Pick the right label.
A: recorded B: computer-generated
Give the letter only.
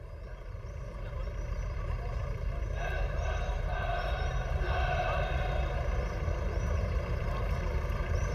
B